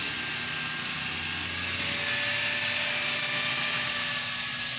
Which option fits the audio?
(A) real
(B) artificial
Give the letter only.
A